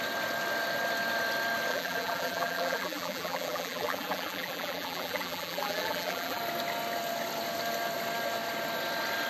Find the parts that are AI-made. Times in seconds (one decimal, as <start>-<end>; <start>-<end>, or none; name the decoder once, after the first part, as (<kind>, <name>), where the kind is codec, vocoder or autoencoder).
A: 1.7-6.4 (vocoder, BigVGAN v2)